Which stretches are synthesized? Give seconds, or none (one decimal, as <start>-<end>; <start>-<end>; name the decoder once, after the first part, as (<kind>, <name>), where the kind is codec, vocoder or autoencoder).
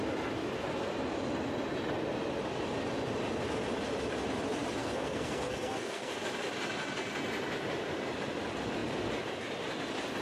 4.8-6.1 (codec, SNAC)